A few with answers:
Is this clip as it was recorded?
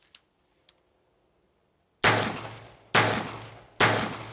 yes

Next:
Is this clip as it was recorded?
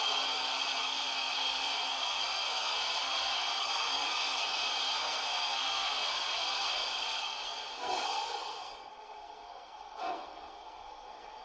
no